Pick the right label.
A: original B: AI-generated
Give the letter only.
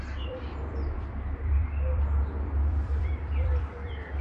B